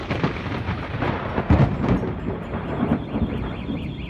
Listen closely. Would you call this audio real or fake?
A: fake